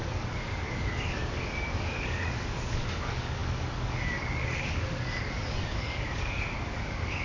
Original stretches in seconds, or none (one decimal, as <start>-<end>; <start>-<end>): none